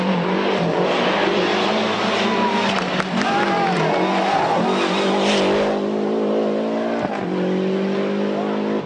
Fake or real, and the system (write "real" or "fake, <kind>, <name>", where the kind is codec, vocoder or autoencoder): real